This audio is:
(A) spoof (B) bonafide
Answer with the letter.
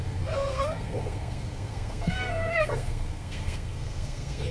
A